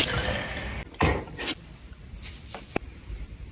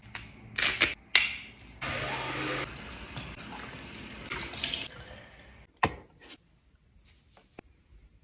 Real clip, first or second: second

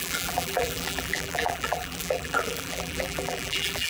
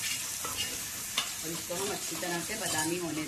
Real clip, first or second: second